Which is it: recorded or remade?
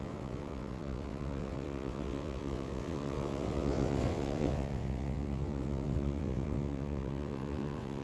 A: remade